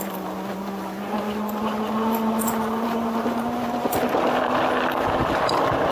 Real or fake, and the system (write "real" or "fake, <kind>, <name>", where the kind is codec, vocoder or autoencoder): real